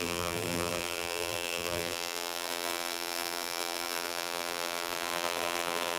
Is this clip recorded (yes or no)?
no